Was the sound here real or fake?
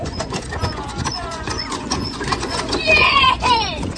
fake